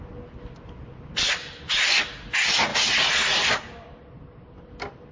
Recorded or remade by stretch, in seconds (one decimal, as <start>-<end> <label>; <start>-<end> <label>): 0.0-5.1 recorded